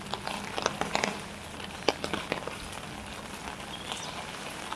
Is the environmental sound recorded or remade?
recorded